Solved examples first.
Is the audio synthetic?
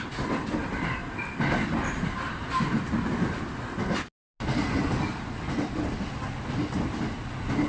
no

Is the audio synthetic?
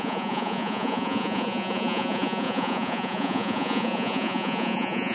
yes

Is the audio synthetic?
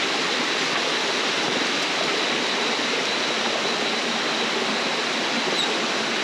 no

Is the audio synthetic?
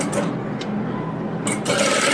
no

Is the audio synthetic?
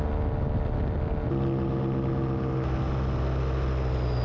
no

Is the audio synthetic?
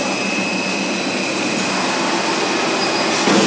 no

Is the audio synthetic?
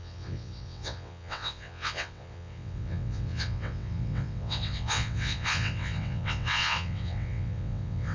yes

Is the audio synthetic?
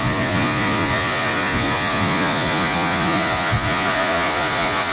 yes